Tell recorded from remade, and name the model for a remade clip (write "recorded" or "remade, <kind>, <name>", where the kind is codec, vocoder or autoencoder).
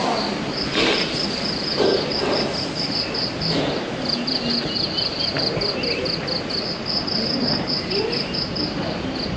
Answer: recorded